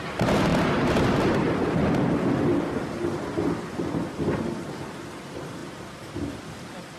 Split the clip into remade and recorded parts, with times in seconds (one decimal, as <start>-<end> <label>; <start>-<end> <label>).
0.0-7.0 recorded